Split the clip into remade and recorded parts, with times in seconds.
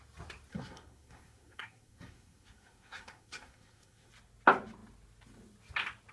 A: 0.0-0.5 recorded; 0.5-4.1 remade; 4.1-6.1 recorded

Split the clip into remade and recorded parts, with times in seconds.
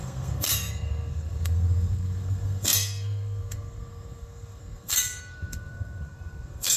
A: 0.0-6.8 remade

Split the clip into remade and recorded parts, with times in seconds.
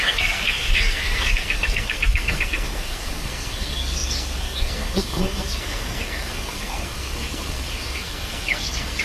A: 0.0-9.0 remade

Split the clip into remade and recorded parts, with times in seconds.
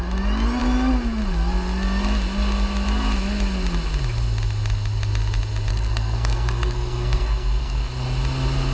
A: 0.0-5.7 recorded; 5.7-7.9 remade; 7.9-8.7 recorded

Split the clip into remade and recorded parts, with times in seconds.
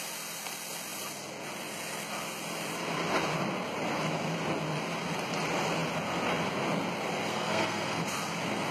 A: 0.0-7.3 recorded; 7.3-8.0 remade; 8.0-8.7 recorded